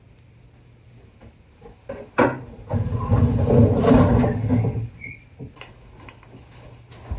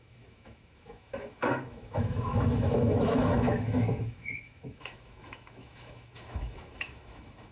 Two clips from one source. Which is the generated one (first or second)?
second